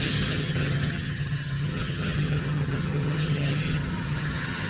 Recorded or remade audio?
remade